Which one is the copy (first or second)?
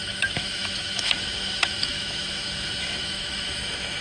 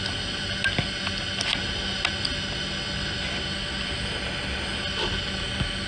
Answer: first